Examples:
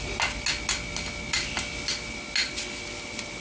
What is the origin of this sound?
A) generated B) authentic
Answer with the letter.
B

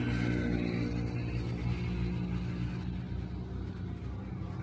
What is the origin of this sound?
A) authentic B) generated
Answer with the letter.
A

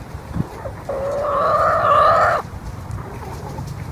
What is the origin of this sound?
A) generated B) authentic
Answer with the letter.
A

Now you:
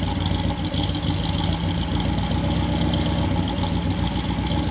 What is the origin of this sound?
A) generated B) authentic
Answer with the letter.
B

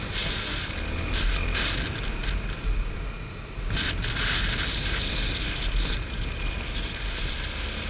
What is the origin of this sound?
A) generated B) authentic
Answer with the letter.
B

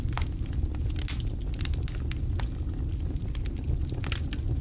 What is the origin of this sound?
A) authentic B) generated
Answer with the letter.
A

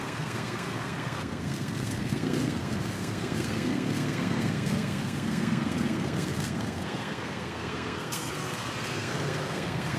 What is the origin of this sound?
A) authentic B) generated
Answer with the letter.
B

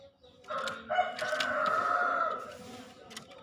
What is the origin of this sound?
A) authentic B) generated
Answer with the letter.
A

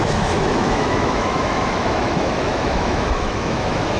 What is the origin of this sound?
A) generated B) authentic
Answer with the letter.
A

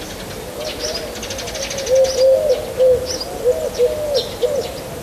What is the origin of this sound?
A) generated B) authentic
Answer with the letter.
B